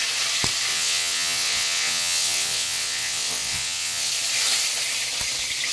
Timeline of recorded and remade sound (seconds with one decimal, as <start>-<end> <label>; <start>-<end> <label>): 0.0-0.7 recorded; 0.7-4.1 remade; 4.1-5.7 recorded